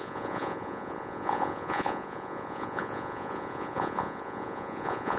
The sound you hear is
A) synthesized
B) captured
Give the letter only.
A